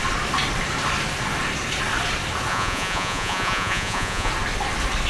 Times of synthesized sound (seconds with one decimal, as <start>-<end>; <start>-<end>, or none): 2.5-4.3